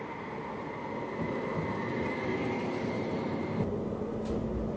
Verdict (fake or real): real